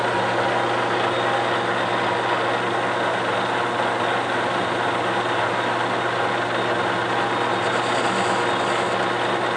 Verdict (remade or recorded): recorded